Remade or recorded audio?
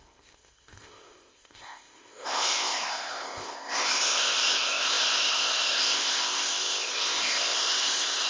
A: remade